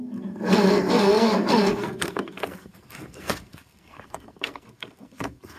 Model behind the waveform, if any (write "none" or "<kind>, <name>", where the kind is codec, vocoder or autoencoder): codec, SNAC